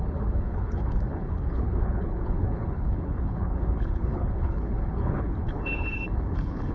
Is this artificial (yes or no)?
yes